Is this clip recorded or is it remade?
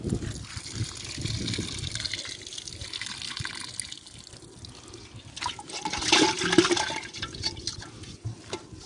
recorded